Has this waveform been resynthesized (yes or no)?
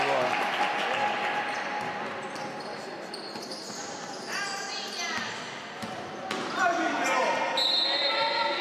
no